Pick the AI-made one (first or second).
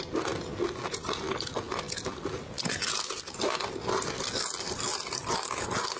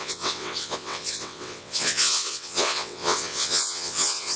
second